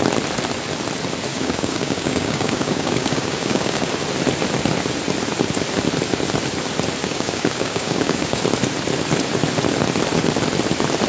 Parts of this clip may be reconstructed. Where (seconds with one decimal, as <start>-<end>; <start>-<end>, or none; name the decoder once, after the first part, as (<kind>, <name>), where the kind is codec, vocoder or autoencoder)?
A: 1.3-3.9 (codec, DAC); 7.0-8.4